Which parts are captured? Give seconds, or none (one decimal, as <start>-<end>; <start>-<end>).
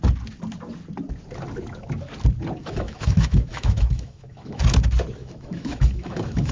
0.0-2.6; 4.6-5.2